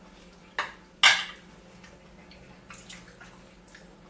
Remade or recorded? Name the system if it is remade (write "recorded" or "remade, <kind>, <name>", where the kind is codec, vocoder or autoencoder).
recorded